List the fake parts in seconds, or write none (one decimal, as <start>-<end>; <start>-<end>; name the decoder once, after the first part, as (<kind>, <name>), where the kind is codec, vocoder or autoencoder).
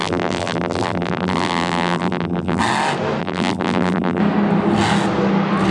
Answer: 0.0-2.6 (vocoder, BigVGAN v2); 3.2-4.2